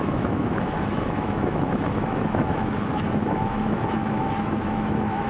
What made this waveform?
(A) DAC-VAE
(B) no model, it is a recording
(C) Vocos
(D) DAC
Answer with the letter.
A